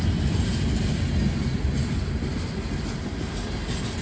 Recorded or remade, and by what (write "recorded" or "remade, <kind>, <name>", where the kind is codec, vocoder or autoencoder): recorded